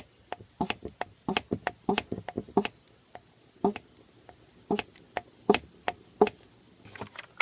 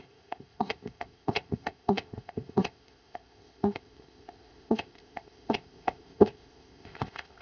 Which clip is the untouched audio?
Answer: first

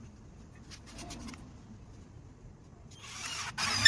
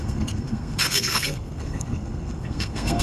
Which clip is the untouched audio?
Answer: first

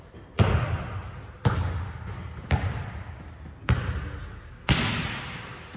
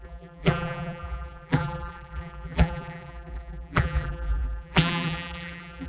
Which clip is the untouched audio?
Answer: first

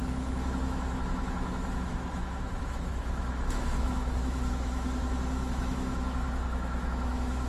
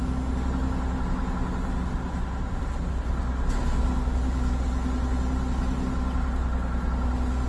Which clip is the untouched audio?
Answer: second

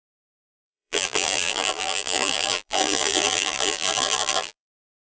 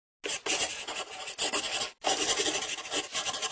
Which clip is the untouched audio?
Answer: second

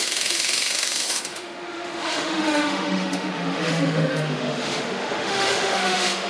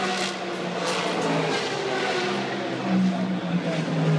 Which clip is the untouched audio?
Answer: second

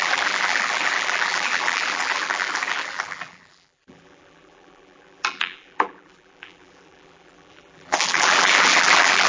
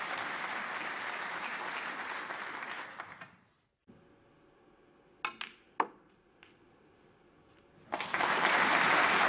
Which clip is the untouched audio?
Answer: second